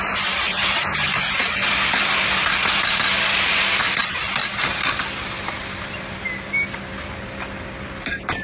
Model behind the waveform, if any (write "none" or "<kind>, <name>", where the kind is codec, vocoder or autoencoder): none